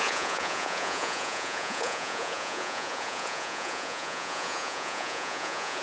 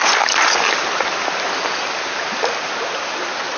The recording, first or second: second